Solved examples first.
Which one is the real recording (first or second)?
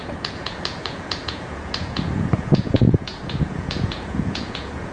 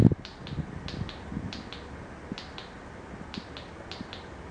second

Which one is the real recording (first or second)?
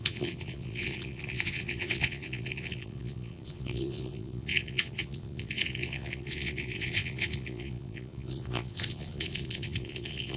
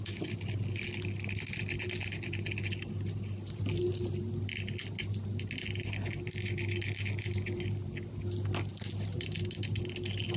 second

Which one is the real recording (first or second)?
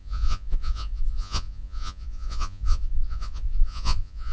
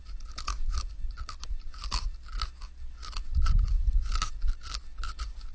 second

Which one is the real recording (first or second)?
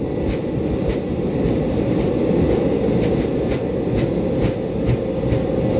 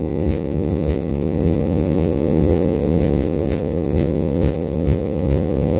first